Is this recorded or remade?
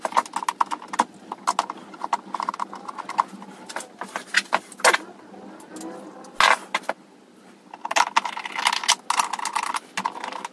recorded